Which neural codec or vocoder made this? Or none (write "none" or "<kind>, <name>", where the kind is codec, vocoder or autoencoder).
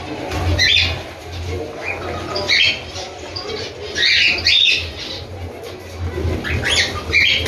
none